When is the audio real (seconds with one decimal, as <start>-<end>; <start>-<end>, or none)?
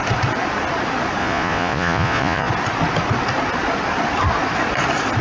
0.0-1.2; 2.5-5.2